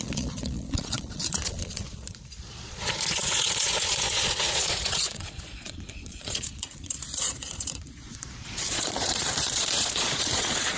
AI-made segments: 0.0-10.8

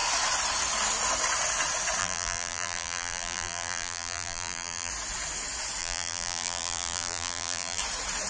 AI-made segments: 2.0-4.9; 5.8-7.8

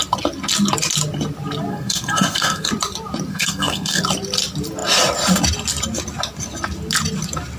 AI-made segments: 1.7-2.7; 3.3-4.0

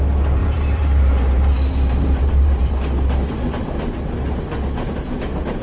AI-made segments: 0.4-2.7